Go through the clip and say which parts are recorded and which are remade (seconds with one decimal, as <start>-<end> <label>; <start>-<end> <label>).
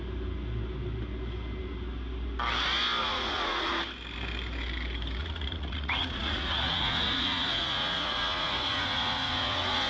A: 0.0-3.0 recorded; 3.0-3.7 remade; 3.7-5.2 recorded; 5.2-9.9 remade